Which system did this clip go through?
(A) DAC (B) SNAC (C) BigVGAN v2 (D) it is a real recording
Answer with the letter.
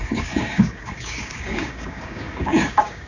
A